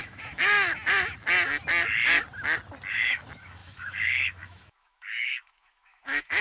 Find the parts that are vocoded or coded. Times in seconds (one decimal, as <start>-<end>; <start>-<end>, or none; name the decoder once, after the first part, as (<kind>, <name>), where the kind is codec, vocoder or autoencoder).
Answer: 0.0-0.7 (autoencoder, DAC-VAE); 2.9-6.4